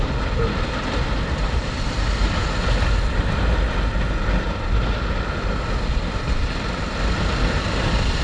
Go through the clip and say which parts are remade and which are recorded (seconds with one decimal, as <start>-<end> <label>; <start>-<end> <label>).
0.0-8.2 recorded